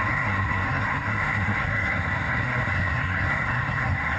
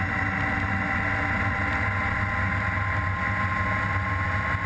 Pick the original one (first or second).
second